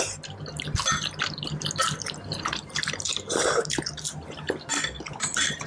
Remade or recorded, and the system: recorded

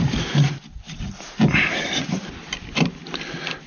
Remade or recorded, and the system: recorded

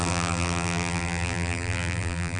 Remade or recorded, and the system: remade, vocoder, BigVGAN v2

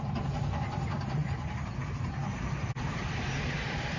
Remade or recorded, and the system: remade, vocoder, BigVGAN v2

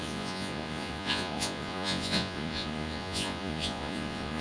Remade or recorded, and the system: remade, vocoder, Vocos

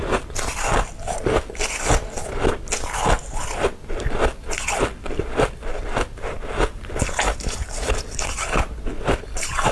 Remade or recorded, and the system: recorded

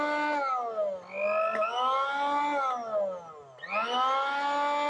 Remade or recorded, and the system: recorded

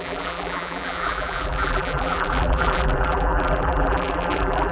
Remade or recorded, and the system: remade, vocoder, BigVGAN v2